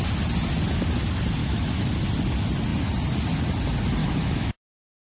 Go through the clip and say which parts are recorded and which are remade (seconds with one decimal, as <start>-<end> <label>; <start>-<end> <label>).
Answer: 0.0-1.4 recorded; 1.4-1.9 remade; 1.9-4.0 recorded; 4.0-4.5 remade; 4.5-5.1 recorded